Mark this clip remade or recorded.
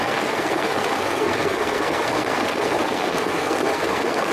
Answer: remade